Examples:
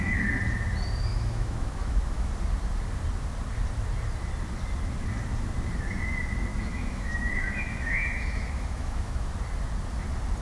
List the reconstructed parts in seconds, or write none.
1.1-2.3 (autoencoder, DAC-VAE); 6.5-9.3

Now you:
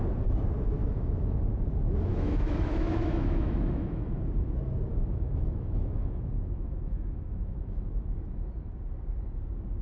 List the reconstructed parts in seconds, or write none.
0.8-1.4 (autoencoder, DAC-VAE); 2.1-4.1; 4.9-8.5

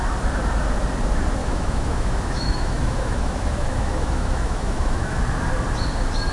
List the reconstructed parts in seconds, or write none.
1.4-5.2 (autoencoder, DAC-VAE)

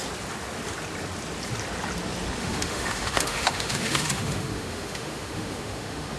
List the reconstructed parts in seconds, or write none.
2.4-6.2 (autoencoder, DAC-VAE)

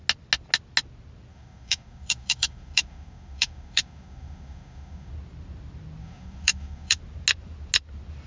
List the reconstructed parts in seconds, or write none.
1.3-5.1 (autoencoder, DAC-VAE); 6.0-7.0

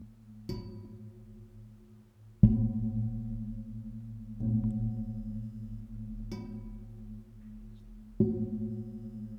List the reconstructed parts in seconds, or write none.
4.9-5.8 (autoencoder, DAC-VAE); 8.7-9.4

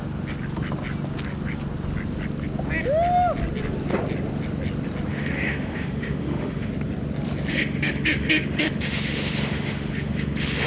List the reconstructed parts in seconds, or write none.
5.1-6.7 (autoencoder, DAC-VAE); 7.5-10.7